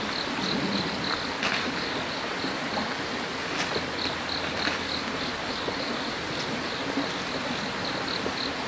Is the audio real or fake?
real